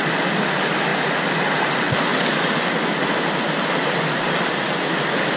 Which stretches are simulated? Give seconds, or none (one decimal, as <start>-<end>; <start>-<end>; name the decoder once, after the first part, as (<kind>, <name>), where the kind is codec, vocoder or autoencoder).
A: none